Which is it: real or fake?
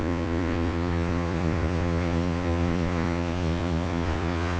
fake